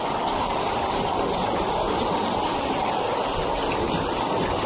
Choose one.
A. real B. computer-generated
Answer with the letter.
A